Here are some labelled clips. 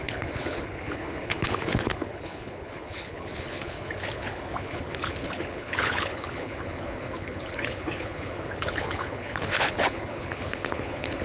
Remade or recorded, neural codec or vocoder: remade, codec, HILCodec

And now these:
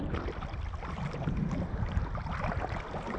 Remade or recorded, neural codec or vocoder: recorded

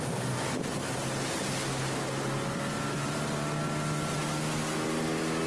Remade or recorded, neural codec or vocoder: recorded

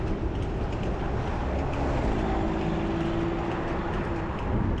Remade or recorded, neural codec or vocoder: recorded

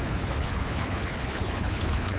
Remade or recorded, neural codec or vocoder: remade, codec, HILCodec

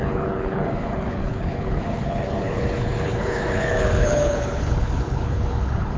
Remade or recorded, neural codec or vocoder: remade, codec, HILCodec